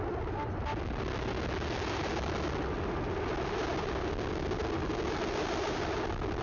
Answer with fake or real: real